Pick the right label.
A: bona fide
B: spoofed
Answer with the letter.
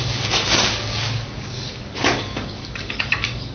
B